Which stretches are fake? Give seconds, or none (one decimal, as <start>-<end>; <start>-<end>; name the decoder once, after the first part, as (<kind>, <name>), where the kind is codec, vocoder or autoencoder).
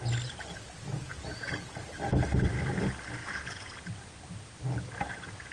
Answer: 0.9-1.8 (vocoder, Vocos); 3.2-3.8